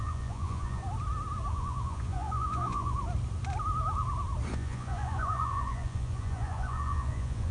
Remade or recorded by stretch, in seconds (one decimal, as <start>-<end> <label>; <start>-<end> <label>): 0.0-0.8 remade; 0.8-1.5 recorded; 1.5-3.0 remade; 3.0-4.5 recorded; 4.5-7.5 remade